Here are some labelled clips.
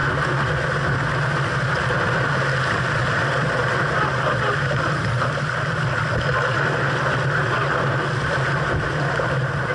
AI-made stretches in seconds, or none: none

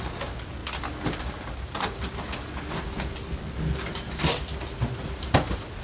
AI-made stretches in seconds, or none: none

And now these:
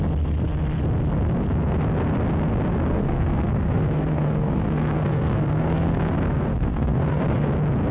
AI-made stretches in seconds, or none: 2.9-7.5